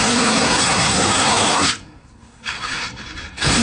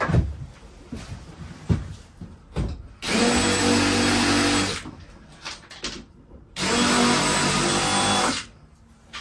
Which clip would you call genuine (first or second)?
second